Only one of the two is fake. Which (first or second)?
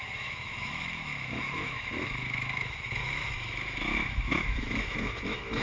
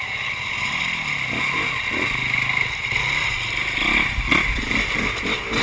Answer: first